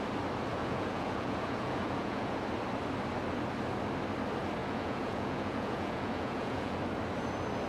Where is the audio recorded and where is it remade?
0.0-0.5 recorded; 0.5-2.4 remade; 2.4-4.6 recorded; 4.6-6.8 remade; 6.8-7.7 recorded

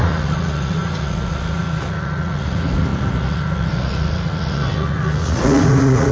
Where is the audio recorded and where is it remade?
0.0-6.1 remade

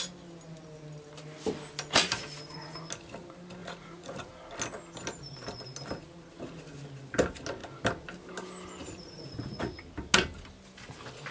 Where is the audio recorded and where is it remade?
0.0-3.6 recorded; 3.6-4.3 remade; 4.3-8.8 recorded; 8.8-9.7 remade; 9.7-11.3 recorded

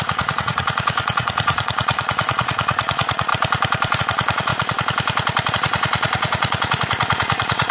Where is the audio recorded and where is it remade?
0.0-3.3 remade; 3.3-4.0 recorded; 4.0-4.5 remade; 4.5-5.5 recorded; 5.5-7.7 remade